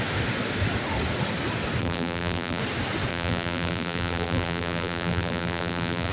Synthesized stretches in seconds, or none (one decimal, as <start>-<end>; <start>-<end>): 1.8-2.6; 3.1-6.1